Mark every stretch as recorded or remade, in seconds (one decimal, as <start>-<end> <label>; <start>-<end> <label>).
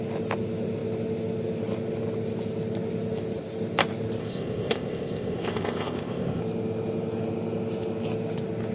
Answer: 0.0-4.2 recorded; 4.2-6.4 remade; 6.4-8.7 recorded